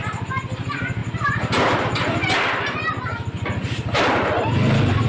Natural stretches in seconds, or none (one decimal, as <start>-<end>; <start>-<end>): 0.0-5.1